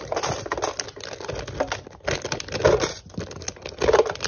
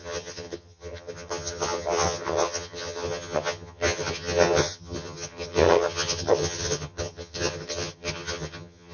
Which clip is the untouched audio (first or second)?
first